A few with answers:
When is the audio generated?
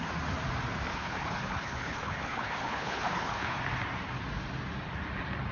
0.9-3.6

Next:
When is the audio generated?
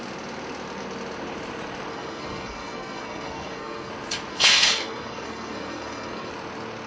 1.9-3.9; 4.3-6.3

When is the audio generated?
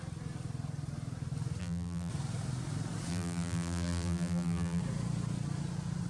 1.6-2.1; 3.1-4.8